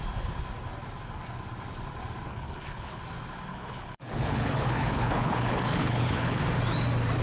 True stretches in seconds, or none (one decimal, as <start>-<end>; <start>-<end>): 0.0-2.3; 3.0-3.5; 6.4-7.2